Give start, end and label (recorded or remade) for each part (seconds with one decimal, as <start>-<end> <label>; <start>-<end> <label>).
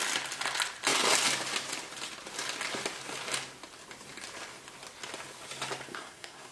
0.0-5.9 recorded; 5.9-6.5 remade